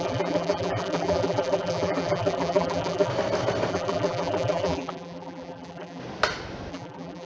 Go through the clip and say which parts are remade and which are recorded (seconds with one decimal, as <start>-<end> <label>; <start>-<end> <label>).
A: 0.0-3.1 remade; 3.1-3.7 recorded; 3.7-6.0 remade; 6.0-6.7 recorded; 6.7-7.2 remade